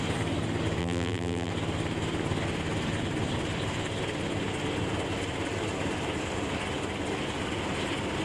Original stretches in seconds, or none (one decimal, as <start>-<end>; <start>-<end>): 0.0-0.8; 1.5-8.2